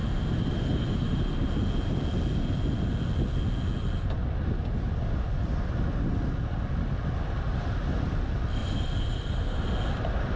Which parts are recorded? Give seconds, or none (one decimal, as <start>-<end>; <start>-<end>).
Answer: 0.0-8.6; 9.7-10.4